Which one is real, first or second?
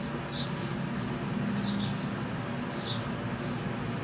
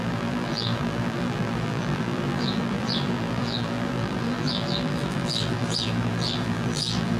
first